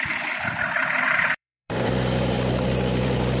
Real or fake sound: fake